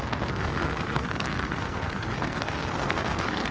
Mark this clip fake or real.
fake